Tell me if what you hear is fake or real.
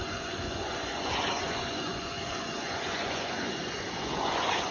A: fake